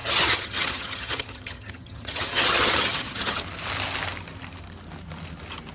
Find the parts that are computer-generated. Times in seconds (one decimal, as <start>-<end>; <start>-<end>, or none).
0.0-3.4